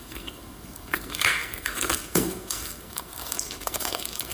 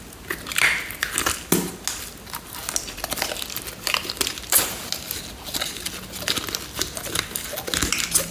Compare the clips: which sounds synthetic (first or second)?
first